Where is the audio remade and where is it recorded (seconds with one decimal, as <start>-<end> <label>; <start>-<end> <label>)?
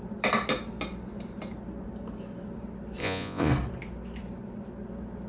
0.0-3.0 recorded; 3.0-3.5 remade; 3.5-5.3 recorded